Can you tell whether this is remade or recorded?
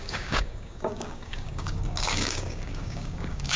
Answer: remade